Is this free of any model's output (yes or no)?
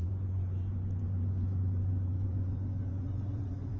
no